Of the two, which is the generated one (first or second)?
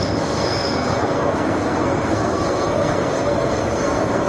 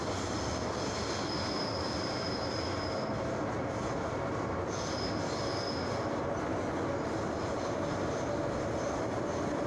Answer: first